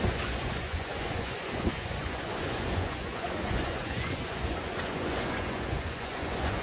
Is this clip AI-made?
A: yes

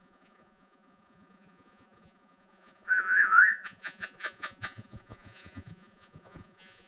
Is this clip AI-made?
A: yes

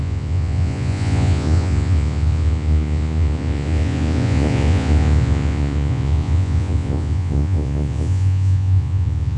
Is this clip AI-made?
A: yes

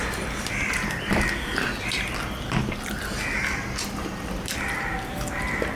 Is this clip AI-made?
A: no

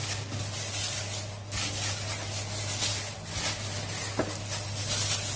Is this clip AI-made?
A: no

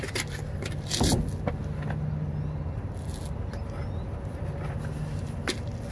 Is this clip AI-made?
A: no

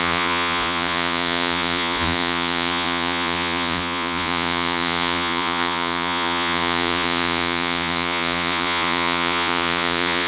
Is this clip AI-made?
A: yes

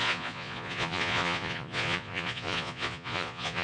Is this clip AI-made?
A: yes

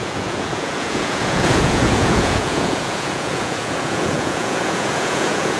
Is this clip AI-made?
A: yes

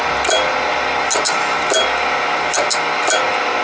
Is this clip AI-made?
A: no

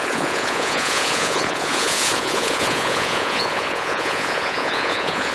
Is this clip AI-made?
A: yes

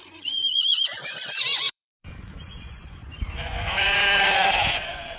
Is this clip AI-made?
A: yes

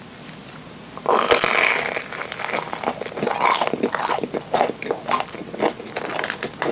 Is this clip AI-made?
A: no